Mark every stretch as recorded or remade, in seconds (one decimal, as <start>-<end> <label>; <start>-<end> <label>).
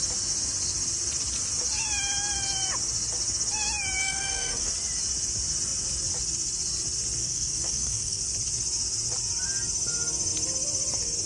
0.0-4.0 recorded; 4.0-4.7 remade; 4.7-7.2 recorded; 7.2-8.2 remade; 8.2-11.3 recorded